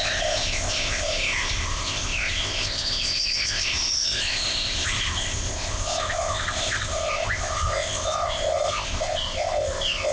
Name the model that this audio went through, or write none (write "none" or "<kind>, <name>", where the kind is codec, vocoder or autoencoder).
codec, ZipCodec